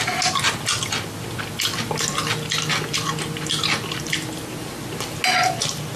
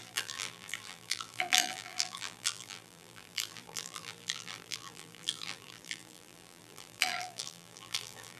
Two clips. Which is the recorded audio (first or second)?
first